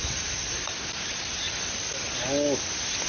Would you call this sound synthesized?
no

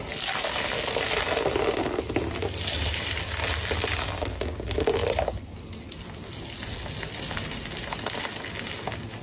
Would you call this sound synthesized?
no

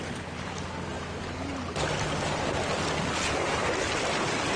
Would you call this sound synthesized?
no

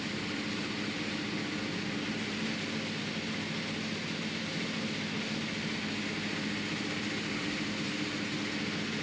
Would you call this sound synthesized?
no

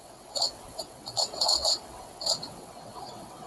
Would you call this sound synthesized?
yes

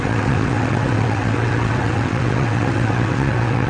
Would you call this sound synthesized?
yes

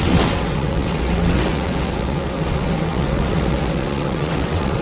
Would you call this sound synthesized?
yes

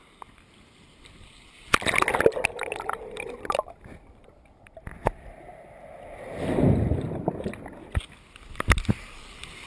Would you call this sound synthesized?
no